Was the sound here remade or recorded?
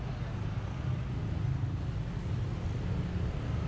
recorded